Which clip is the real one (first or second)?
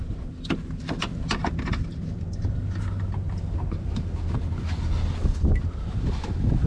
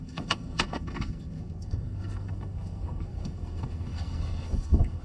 first